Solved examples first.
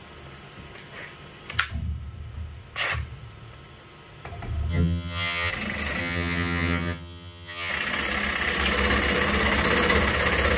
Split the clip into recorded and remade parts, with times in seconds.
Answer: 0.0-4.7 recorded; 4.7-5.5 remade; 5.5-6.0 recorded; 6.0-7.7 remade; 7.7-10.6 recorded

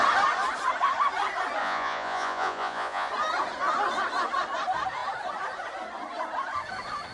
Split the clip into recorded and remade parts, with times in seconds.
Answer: 0.0-1.6 recorded; 1.6-3.1 remade; 3.1-7.1 recorded

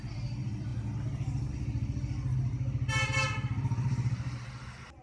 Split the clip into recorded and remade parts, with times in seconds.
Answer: 0.0-5.0 recorded

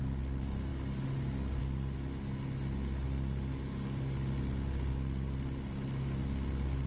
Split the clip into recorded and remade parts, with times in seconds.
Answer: 0.0-6.9 recorded

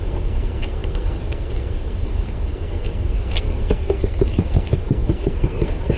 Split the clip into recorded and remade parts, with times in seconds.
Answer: 0.0-6.0 remade

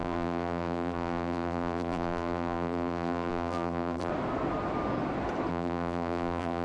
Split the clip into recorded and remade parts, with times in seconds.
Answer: 0.0-4.1 remade; 4.1-5.5 recorded; 5.5-6.6 remade

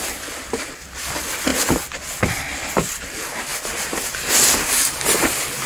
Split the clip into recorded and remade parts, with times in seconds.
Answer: 0.0-5.7 recorded